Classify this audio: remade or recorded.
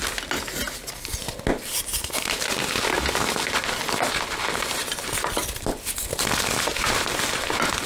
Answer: recorded